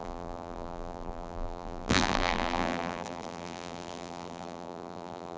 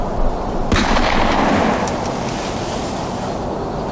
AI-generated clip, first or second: first